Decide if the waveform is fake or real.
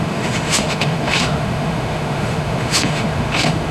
fake